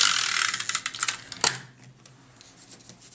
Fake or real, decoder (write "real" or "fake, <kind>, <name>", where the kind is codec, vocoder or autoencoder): real